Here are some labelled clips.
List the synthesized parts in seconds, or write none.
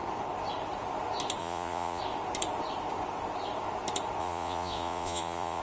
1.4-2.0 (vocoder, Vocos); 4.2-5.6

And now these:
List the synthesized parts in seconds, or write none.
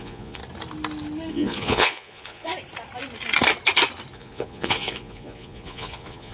0.0-0.4 (vocoder, Vocos); 1.3-2.5; 4.1-6.3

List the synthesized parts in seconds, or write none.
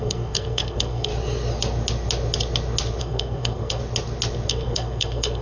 0.0-1.1 (codec, SNAC); 3.0-3.8; 4.5-5.4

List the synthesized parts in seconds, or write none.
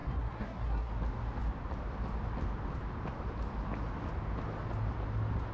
0.0-0.9 (codec, SNAC)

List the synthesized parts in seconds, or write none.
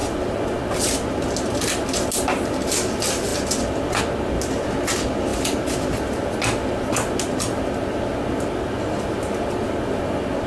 none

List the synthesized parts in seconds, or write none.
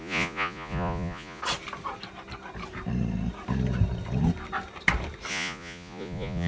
0.0-1.4 (vocoder, Vocos); 5.3-6.5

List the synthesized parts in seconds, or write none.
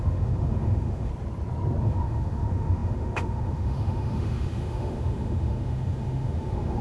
0.0-1.1 (autoencoder, DAC-VAE); 1.8-6.8